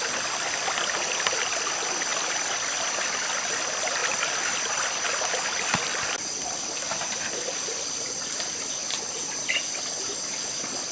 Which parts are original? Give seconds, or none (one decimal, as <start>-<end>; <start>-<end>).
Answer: 0.0-10.9